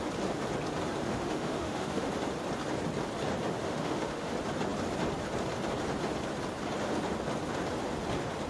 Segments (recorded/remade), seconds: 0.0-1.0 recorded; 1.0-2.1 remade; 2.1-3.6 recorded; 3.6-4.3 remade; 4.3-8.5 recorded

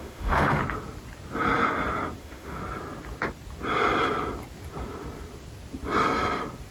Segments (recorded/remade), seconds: 0.0-0.6 remade; 0.6-2.2 recorded; 2.2-2.6 remade; 2.6-6.7 recorded

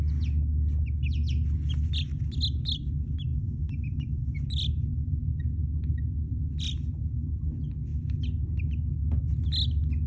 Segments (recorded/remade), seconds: 0.0-3.3 recorded; 3.3-4.4 remade; 4.4-10.1 recorded

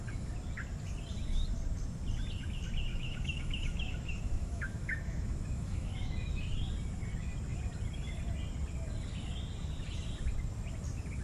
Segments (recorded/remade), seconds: 0.0-2.9 recorded; 2.9-6.4 remade; 6.4-11.2 recorded

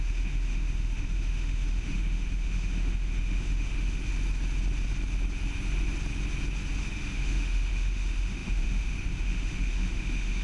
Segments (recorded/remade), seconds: 0.0-4.0 remade; 4.0-6.8 recorded; 6.8-10.4 remade

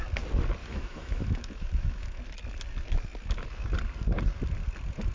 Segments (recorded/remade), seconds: 0.0-0.6 recorded; 0.6-2.2 remade; 2.2-5.1 recorded

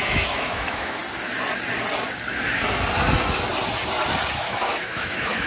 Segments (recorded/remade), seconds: 0.0-1.0 remade; 1.0-4.3 recorded; 4.3-5.5 remade

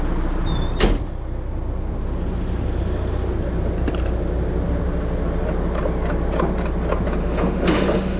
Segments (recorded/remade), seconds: 0.0-7.2 recorded; 7.2-8.2 remade